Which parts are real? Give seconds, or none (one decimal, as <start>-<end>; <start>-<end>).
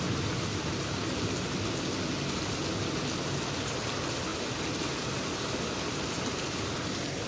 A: 0.0-7.3